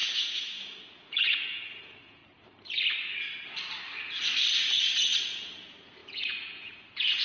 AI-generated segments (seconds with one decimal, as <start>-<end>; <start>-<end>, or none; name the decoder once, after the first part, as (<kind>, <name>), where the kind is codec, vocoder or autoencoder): 0.0-2.2 (vocoder, Vocos); 5.2-7.2